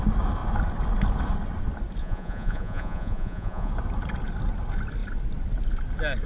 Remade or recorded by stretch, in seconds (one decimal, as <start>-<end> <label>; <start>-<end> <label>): 0.0-2.0 recorded; 2.0-3.7 remade; 3.7-6.3 recorded